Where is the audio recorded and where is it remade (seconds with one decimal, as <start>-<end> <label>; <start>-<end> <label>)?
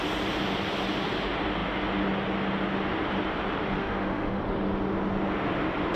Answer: 0.0-3.8 recorded; 3.8-4.4 remade; 4.4-6.0 recorded